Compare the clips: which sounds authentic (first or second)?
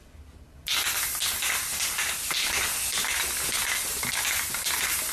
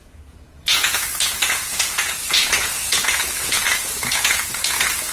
first